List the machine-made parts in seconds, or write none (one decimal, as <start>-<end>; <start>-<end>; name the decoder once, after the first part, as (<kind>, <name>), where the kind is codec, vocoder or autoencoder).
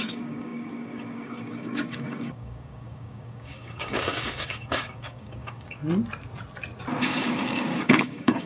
0.0-5.8 (codec, DAC); 7.0-8.5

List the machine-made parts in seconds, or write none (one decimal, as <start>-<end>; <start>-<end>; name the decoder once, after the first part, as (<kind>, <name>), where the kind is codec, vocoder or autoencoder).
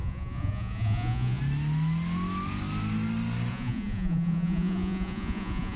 0.0-1.4 (vocoder, Vocos); 3.5-5.8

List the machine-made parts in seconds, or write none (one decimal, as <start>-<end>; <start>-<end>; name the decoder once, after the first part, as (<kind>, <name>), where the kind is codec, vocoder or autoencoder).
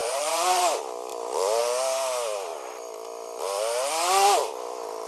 0.0-0.6 (vocoder, Vocos)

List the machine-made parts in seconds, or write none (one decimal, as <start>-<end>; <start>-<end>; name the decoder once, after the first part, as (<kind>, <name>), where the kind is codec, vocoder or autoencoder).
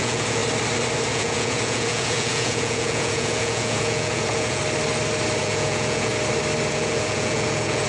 0.0-0.4 (vocoder, Vocos); 1.1-4.6; 5.4-6.1; 6.7-7.9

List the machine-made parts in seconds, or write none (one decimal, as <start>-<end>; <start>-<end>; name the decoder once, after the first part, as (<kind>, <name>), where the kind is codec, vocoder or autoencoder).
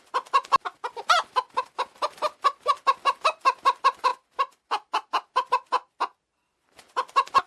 none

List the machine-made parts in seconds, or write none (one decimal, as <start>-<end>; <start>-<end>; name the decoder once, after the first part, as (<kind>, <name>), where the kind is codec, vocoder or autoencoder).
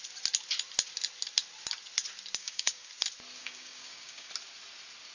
2.4-2.9 (codec, DAC); 3.4-4.3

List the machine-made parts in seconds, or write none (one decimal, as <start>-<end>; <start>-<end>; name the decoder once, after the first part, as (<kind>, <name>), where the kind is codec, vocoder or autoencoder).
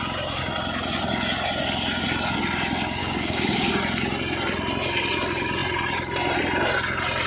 3.0-3.7 (codec, DAC)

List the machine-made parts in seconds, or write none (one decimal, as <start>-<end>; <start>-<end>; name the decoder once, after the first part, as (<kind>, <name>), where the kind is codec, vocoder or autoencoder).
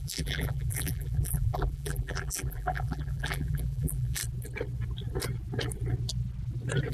0.0-4.2 (vocoder, BigVGAN v2)